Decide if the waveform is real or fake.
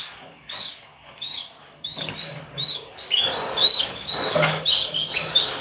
fake